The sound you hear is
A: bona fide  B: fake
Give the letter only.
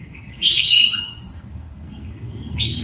B